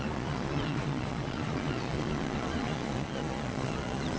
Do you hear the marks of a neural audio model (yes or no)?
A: yes